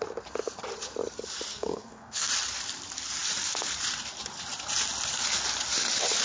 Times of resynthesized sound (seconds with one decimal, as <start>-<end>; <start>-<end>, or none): 1.5-2.3